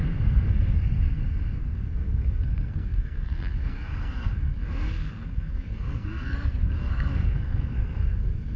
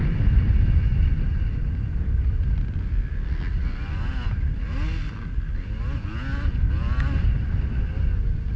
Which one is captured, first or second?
second